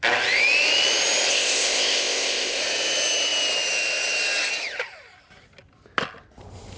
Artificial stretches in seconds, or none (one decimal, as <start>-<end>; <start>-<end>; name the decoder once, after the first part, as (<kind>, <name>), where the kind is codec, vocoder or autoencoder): 1.3-2.6 (codec, ZipCodec)